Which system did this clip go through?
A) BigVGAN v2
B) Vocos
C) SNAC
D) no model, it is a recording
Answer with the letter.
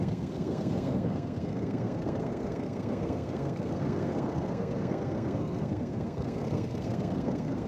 C